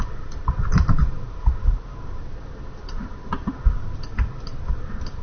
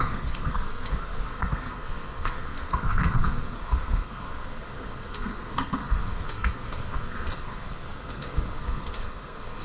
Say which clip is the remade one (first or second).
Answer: second